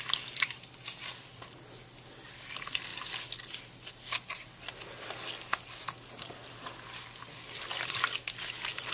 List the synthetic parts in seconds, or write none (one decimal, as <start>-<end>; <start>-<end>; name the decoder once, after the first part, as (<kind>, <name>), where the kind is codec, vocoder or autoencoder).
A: none